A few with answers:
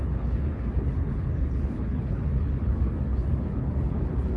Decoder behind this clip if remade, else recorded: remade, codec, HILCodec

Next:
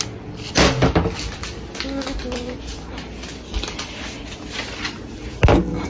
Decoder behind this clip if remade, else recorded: recorded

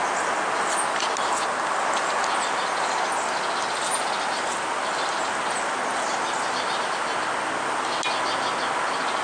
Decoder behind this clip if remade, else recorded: recorded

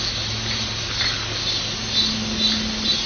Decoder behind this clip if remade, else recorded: recorded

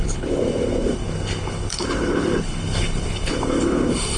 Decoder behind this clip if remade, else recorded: remade, codec, HILCodec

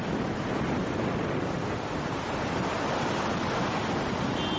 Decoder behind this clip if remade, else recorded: recorded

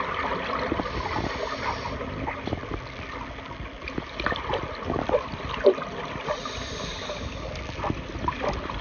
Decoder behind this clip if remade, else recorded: recorded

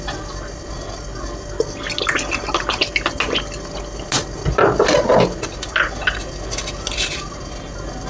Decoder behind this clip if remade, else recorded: recorded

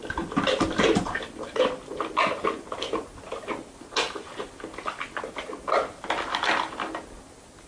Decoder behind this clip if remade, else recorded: recorded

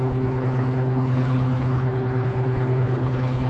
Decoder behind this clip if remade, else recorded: remade, codec, HILCodec